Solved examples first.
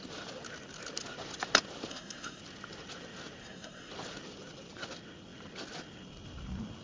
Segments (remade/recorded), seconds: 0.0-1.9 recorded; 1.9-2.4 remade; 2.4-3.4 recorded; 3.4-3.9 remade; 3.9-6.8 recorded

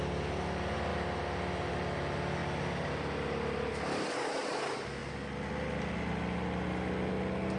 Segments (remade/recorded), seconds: 0.0-7.6 recorded

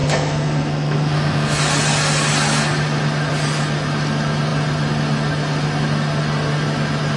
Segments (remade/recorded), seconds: 0.0-1.6 remade; 1.6-7.2 recorded

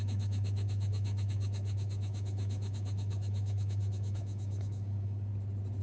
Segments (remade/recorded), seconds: 0.0-5.3 remade; 5.3-5.8 recorded

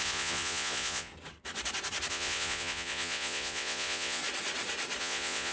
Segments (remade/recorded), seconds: 0.0-1.1 remade; 1.1-2.1 recorded; 2.1-4.2 remade; 4.2-5.0 recorded; 5.0-5.5 remade

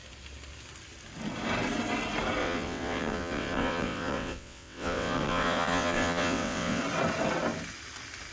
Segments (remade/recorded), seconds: 0.0-2.4 recorded; 2.4-6.8 remade; 6.8-8.3 recorded

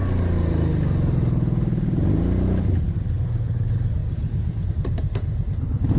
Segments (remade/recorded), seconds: 0.0-4.0 recorded; 4.0-4.7 remade; 4.7-6.0 recorded